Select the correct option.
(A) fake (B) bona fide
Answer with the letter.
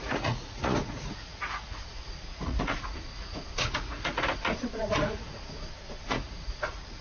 A